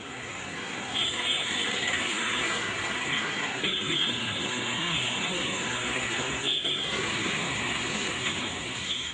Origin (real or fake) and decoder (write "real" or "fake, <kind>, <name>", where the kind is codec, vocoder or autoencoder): fake, codec, SNAC